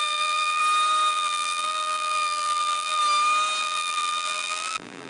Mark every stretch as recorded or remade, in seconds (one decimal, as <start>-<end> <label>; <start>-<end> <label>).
0.0-0.6 remade; 0.6-1.1 recorded; 1.1-3.0 remade; 3.0-3.6 recorded; 3.6-5.1 remade